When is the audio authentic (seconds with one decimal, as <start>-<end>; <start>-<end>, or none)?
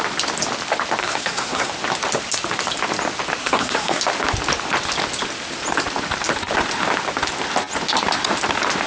0.0-1.0; 1.7-3.4; 4.0-8.9